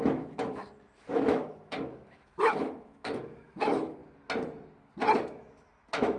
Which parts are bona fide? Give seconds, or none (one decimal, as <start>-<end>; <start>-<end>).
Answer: 4.0-5.2